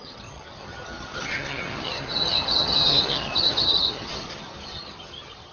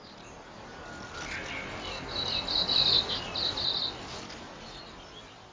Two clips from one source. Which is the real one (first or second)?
second